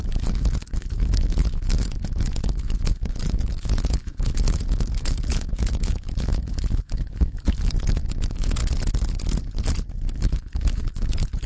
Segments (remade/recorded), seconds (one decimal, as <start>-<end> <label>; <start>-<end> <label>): 0.0-8.6 remade; 8.6-10.1 recorded; 10.1-11.5 remade